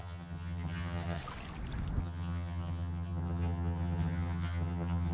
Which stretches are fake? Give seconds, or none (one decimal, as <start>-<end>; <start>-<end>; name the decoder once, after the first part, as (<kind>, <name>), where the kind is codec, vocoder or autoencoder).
0.0-1.2 (vocoder, HiFi-GAN); 2.0-5.1